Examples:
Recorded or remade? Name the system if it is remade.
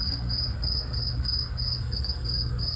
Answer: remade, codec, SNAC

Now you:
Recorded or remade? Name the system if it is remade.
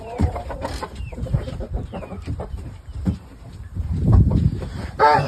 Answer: remade, vocoder, BigVGAN v2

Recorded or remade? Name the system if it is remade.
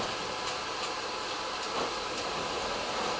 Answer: recorded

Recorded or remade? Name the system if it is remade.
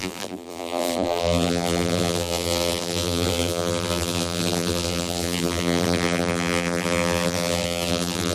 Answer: remade, vocoder, BigVGAN v2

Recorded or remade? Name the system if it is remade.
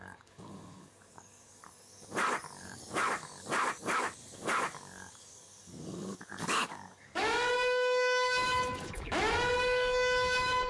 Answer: remade, codec, DAC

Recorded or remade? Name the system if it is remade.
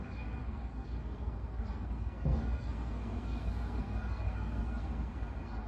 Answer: remade, codec, SNAC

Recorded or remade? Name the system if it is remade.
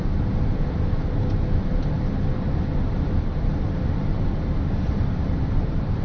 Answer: recorded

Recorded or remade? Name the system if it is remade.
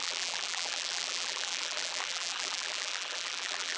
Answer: remade, vocoder, BigVGAN v2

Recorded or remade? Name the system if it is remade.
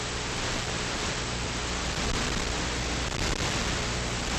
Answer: recorded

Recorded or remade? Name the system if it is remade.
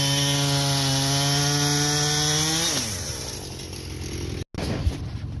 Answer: recorded